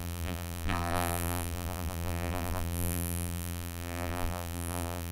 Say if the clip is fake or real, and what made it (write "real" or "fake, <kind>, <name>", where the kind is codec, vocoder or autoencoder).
fake, vocoder, BigVGAN v2